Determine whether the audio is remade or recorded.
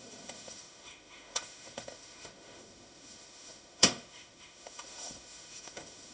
remade